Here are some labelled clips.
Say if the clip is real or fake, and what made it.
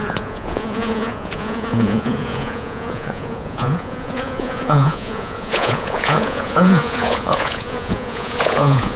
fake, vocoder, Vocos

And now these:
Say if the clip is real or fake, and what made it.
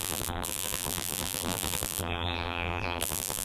fake, vocoder, BigVGAN v2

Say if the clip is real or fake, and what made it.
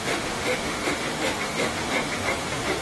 fake, autoencoder, DAC-VAE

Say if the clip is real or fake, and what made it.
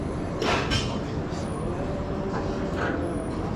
real